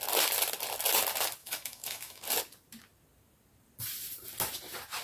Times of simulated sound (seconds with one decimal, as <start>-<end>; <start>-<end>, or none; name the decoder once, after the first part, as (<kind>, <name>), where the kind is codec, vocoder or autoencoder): 1.4-2.2 (autoencoder, DAC-VAE)